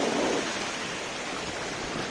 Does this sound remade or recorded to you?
recorded